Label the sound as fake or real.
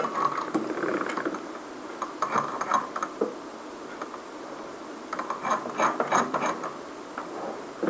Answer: real